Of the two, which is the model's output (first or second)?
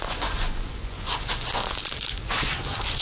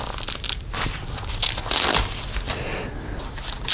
first